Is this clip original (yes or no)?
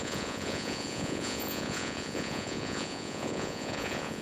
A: no